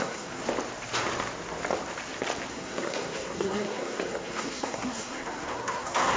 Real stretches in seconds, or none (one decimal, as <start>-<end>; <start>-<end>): 0.4-2.5